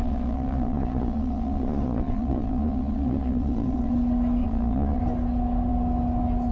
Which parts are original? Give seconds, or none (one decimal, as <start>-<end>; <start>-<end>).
3.9-4.4; 5.0-6.5